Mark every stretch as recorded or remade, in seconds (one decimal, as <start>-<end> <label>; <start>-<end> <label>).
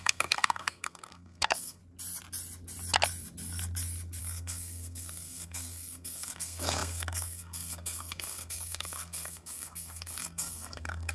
0.0-1.8 remade; 1.8-4.2 recorded; 4.2-11.1 remade